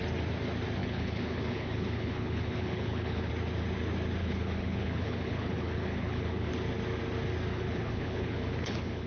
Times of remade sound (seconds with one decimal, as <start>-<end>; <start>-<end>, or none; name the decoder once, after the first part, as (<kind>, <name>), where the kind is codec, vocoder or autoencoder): 0.8-3.3 (codec, HILCodec); 4.2-6.5; 7.5-9.1